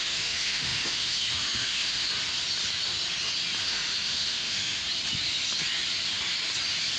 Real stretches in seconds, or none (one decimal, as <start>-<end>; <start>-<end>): 2.1-3.6; 4.8-7.0